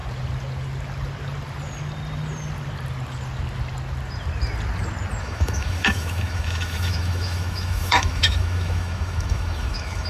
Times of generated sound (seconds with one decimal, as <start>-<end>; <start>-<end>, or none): 5.2-10.1